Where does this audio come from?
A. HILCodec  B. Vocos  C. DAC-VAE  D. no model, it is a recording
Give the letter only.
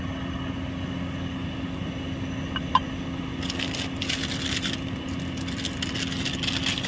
D